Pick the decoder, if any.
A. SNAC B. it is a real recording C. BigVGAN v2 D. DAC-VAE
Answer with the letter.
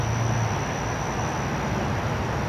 B